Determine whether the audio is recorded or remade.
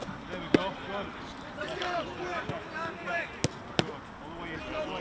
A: recorded